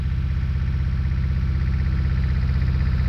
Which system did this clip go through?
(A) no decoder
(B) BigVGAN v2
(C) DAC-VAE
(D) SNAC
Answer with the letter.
A